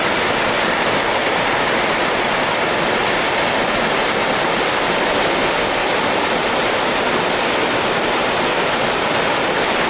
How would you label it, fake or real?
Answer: fake